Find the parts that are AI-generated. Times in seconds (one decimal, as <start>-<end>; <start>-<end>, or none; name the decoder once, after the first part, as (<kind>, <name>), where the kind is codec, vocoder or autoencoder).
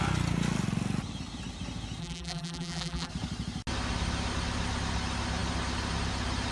2.0-3.1 (vocoder, BigVGAN v2)